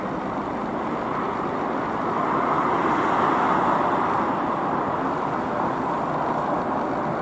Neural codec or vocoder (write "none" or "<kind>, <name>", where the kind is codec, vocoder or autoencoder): none